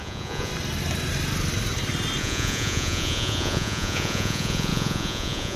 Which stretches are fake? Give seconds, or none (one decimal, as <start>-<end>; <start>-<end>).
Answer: 0.0-0.5; 2.2-5.6